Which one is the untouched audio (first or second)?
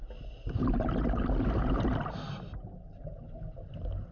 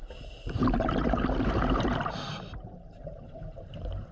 first